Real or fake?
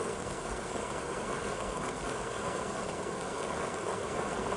fake